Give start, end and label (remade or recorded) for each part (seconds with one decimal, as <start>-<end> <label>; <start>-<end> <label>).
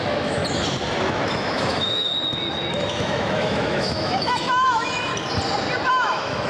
0.0-0.4 remade; 0.4-1.0 recorded; 1.0-2.1 remade; 2.1-2.7 recorded; 2.7-5.1 remade; 5.1-5.9 recorded; 5.9-6.5 remade